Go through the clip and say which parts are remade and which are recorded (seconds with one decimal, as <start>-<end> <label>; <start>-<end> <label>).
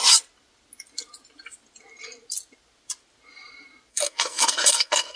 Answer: 0.0-3.9 recorded; 3.9-5.2 remade